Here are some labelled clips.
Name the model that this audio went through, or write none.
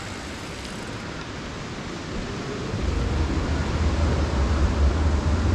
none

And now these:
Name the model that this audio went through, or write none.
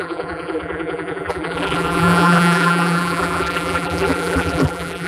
vocoder, BigVGAN v2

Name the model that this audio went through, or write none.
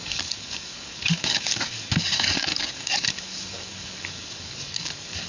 codec, DAC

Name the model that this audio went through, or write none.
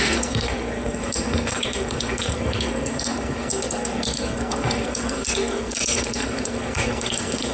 codec, SNAC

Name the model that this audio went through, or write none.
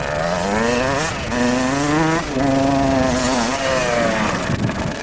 none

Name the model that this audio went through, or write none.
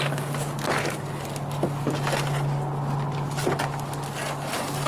none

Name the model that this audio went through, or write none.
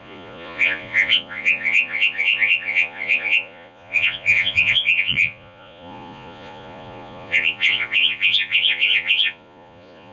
vocoder, Vocos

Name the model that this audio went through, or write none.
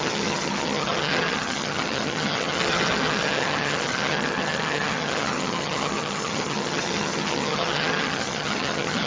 vocoder, HiFi-GAN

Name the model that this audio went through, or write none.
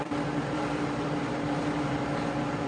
vocoder, BigVGAN v2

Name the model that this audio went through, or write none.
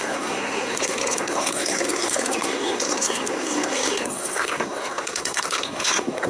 codec, SNAC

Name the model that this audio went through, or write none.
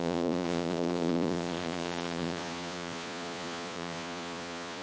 vocoder, Vocos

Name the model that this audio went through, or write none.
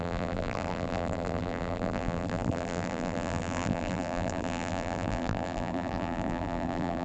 vocoder, BigVGAN v2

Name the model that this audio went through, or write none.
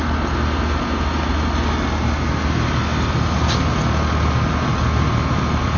none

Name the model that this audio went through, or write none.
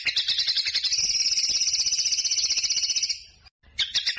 none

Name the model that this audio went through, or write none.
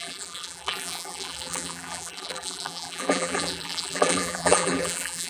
vocoder, BigVGAN v2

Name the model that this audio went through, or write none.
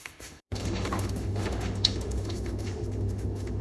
autoencoder, DAC-VAE